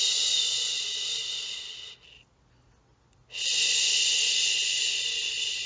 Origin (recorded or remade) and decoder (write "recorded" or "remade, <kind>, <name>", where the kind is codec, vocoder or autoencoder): recorded